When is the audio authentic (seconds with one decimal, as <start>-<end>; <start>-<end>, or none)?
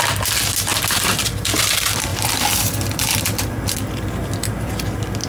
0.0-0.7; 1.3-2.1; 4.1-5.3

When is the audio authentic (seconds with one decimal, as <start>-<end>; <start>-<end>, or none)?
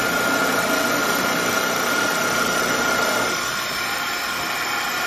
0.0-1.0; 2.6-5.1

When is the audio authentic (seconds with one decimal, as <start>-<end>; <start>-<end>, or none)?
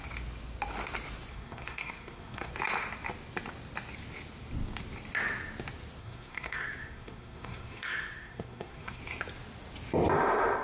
0.0-1.3; 2.5-6.0; 9.0-10.6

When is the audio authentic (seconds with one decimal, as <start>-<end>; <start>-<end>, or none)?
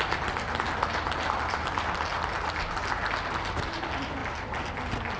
0.0-5.2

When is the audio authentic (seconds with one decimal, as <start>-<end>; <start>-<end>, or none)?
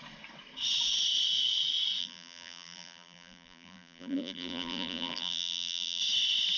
0.0-2.0; 6.0-6.6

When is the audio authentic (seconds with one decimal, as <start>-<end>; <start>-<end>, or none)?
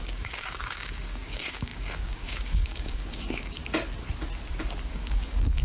3.6-4.9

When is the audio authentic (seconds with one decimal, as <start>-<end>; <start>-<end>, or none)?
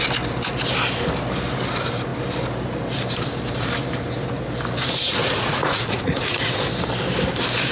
0.0-5.2; 6.6-7.7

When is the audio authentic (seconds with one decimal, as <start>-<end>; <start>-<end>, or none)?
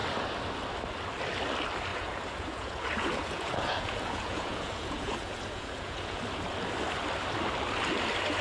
0.0-1.9; 6.2-8.4